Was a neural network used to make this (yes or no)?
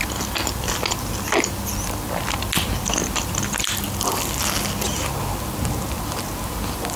no